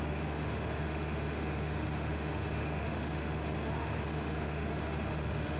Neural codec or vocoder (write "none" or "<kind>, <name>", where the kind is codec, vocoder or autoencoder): autoencoder, DAC-VAE